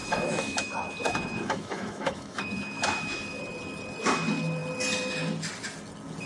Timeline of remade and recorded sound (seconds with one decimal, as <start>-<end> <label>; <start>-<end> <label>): 0.0-3.4 remade; 3.4-6.3 recorded